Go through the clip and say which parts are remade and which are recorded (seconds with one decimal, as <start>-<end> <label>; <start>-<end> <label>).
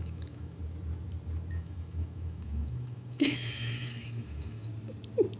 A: 0.0-0.6 remade; 0.6-1.5 recorded; 1.5-4.7 remade; 4.7-5.4 recorded